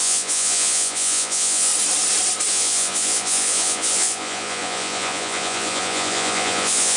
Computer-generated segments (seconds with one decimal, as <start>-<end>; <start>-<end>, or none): 0.0-1.7; 2.5-7.0